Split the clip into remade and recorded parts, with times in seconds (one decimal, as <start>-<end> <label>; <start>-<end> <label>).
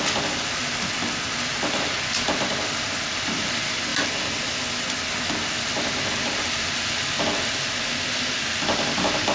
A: 0.0-9.3 recorded